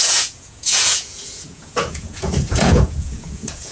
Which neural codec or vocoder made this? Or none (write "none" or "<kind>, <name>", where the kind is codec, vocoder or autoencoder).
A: vocoder, Vocos